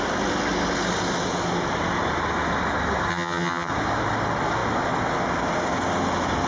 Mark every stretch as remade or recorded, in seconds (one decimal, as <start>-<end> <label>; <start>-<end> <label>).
0.0-3.1 recorded; 3.1-3.7 remade; 3.7-6.5 recorded